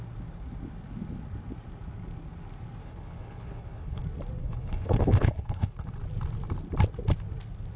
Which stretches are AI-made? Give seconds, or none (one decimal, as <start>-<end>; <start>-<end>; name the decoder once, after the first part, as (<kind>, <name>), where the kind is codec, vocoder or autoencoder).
2.8-4.0 (codec, HILCodec); 4.4-5.9